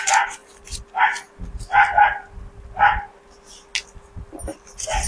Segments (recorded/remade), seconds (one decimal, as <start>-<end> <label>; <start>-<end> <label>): 0.0-5.1 recorded

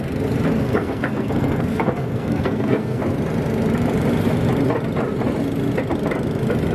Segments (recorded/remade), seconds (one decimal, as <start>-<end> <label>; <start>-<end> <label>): 0.0-0.6 recorded; 0.6-3.0 remade; 3.0-6.7 recorded

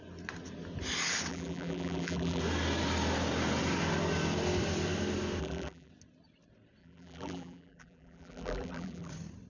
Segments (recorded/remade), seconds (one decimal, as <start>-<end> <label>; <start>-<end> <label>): 0.0-1.3 recorded; 1.3-2.4 remade; 2.4-5.4 recorded; 5.4-5.9 remade; 5.9-6.8 recorded; 6.8-9.1 remade; 9.1-9.5 recorded

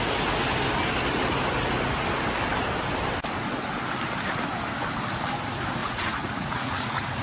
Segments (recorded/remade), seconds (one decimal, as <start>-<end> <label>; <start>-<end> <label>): 0.0-5.8 recorded; 5.8-7.2 remade

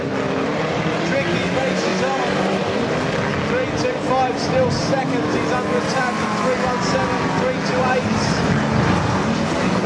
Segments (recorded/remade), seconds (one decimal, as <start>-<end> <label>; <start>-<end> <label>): 0.0-7.7 recorded; 7.7-8.5 remade; 8.5-9.9 recorded

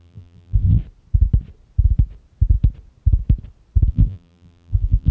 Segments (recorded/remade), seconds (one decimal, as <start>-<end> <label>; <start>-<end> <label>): 0.0-0.8 remade; 0.8-3.9 recorded; 3.9-5.1 remade

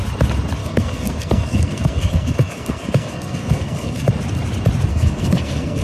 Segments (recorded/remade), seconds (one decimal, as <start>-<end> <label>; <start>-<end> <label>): 0.0-0.6 recorded; 0.6-4.1 remade; 4.1-4.9 recorded; 4.9-5.8 remade